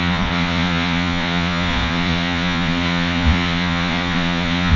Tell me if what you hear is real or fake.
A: fake